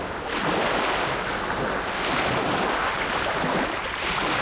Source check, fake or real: real